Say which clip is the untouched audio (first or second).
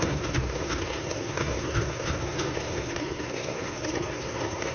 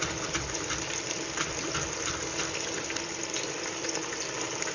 second